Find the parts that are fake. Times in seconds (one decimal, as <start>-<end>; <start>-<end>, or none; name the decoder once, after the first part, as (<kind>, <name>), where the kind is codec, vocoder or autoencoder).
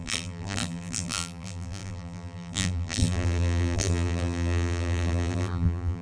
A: 0.0-6.0 (vocoder, BigVGAN v2)